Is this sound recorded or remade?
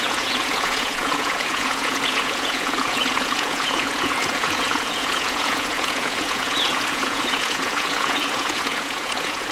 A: remade